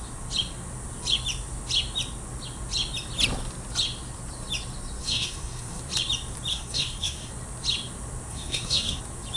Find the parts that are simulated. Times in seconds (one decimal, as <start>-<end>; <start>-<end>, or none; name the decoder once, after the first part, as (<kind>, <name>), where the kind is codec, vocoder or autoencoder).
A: 5.0-5.8 (codec, SNAC); 6.5-7.3; 8.3-9.0